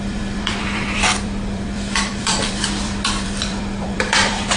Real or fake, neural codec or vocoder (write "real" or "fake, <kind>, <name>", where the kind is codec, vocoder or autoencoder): fake, vocoder, BigVGAN v2